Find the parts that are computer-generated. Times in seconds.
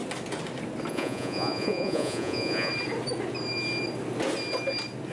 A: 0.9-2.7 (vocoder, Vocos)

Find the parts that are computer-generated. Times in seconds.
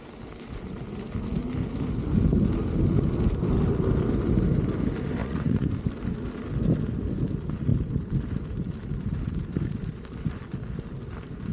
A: 5.2-5.7 (vocoder, Vocos)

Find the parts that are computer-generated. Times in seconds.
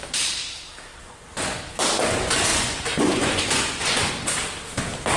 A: 0.9-1.6 (vocoder, Vocos); 2.5-4.1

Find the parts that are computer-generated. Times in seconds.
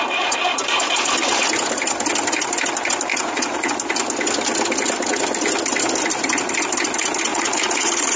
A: 3.1-3.7 (vocoder, Vocos); 7.3-8.2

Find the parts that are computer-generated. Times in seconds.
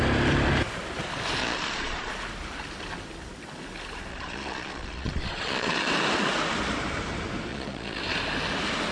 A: 1.4-2.1 (vocoder, Vocos); 4.1-5.9; 7.5-8.0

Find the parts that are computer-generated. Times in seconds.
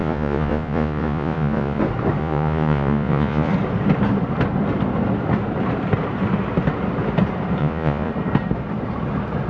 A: 0.0-1.8 (vocoder, Vocos); 2.2-3.5; 7.6-8.1